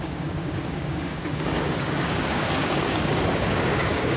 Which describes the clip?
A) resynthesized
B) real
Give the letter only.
A